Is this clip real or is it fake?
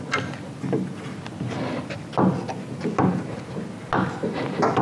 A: real